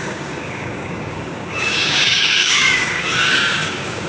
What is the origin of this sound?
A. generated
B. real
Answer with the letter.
A